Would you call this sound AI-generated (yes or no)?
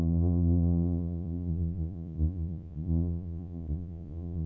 yes